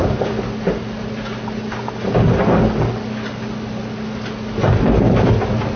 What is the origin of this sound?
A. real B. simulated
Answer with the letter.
A